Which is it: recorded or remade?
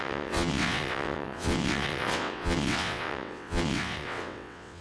remade